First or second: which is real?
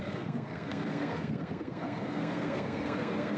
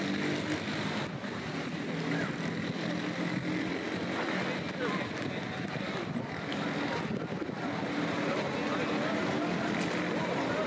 second